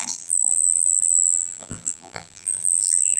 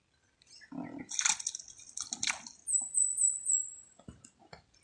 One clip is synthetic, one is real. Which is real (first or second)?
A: second